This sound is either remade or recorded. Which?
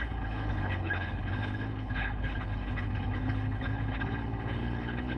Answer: remade